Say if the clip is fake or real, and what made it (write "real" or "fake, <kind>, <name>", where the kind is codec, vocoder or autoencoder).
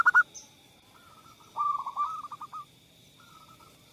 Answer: real